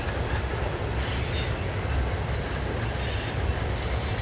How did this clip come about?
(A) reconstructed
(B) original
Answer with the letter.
B